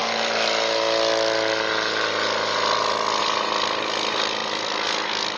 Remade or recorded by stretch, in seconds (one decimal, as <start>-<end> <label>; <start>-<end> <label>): 0.0-5.4 recorded